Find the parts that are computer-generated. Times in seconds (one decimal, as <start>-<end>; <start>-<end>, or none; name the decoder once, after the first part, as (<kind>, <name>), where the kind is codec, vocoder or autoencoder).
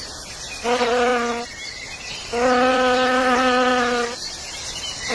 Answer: 0.0-1.1 (vocoder, BigVGAN v2); 2.1-3.7